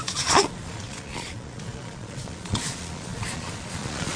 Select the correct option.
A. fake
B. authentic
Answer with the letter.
A